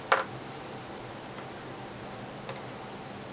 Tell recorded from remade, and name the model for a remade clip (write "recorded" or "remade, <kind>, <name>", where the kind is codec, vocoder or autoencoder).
recorded